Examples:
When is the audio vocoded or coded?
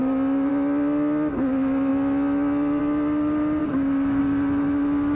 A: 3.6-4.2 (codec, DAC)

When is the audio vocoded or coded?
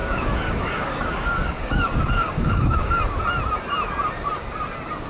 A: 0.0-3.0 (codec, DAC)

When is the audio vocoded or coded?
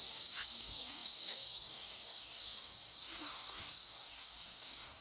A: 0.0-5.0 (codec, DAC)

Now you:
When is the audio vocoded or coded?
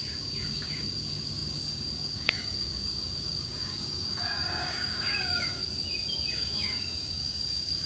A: 0.0-5.6 (codec, DAC); 6.3-7.9